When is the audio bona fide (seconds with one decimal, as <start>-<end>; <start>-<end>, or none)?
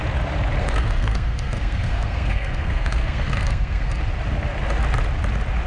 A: 0.0-0.6; 4.0-5.7